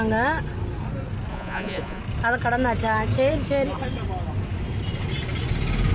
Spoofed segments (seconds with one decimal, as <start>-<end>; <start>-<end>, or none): 1.3-2.0